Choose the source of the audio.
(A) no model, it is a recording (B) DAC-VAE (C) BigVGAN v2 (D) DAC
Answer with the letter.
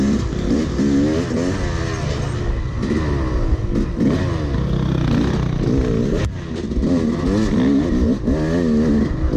A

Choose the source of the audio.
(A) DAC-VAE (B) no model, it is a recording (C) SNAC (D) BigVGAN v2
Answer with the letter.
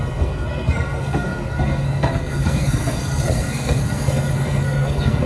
C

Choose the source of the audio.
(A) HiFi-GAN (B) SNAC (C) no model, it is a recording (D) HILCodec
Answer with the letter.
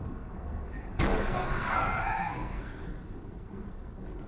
B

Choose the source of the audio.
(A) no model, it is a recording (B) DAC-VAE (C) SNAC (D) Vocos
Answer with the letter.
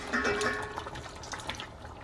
A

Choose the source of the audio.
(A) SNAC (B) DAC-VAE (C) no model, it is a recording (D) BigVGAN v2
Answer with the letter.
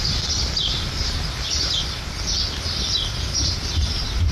C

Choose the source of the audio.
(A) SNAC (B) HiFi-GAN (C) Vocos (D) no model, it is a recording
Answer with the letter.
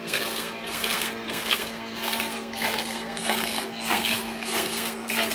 A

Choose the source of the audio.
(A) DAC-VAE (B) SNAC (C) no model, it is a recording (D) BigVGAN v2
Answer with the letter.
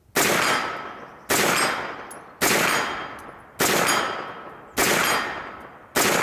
C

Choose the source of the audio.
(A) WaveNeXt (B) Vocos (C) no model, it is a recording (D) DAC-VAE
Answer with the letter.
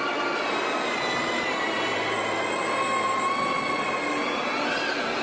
C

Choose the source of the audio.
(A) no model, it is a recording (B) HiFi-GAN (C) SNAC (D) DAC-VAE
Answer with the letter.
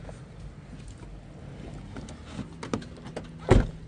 A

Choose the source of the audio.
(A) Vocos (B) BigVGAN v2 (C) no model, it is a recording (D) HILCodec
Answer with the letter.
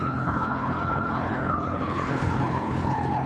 D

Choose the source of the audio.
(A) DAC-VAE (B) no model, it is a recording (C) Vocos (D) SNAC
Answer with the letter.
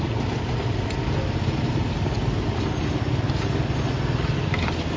B